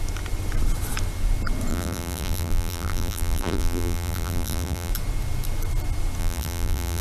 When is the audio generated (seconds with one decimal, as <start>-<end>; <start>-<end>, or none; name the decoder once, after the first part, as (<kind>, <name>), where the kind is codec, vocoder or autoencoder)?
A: 1.7-4.9 (vocoder, BigVGAN v2); 6.2-7.0